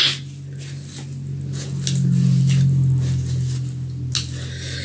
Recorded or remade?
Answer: recorded